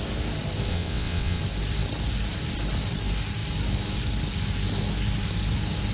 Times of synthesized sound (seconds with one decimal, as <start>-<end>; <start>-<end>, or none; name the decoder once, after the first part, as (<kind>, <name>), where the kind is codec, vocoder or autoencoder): 0.7-1.4 (vocoder, WaveNeXt)